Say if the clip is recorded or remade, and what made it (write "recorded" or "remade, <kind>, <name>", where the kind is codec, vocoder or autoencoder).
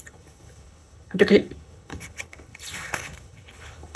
remade, codec, HILCodec